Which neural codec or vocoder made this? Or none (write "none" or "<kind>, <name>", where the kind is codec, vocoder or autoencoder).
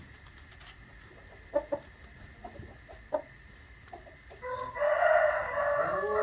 none